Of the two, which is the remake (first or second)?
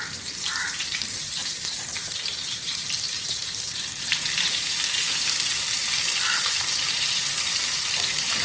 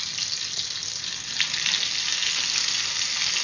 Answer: first